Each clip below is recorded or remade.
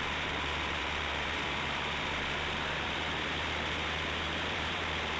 remade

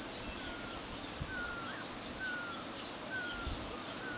recorded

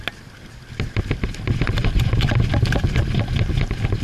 recorded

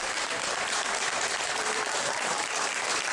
remade